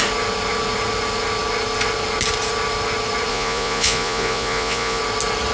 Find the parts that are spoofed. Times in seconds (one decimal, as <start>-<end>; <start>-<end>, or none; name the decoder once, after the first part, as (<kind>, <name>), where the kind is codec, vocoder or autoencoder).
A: 3.3-5.0 (vocoder, Vocos)